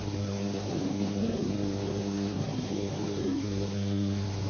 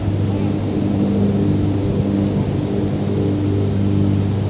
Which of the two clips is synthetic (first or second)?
first